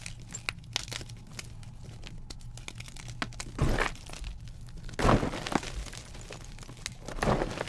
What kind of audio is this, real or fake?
real